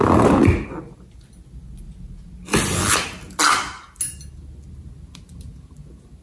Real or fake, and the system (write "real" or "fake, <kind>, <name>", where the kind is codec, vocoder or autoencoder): real